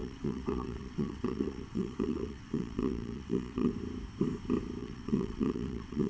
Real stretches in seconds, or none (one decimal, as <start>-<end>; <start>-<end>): 3.7-4.8